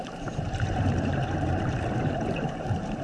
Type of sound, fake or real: fake